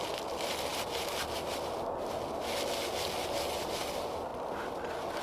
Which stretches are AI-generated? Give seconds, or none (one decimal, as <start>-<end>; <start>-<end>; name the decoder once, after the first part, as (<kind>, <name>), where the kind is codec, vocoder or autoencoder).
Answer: none